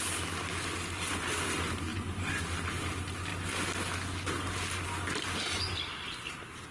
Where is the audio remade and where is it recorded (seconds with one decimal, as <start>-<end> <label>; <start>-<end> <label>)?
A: 0.0-1.9 recorded; 1.9-2.4 remade; 2.4-6.7 recorded